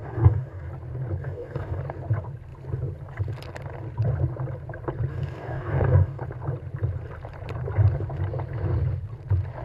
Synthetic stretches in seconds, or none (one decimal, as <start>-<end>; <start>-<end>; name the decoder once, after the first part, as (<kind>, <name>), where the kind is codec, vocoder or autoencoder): 0.0-0.7 (codec, DAC); 1.2-1.8; 5.1-6.2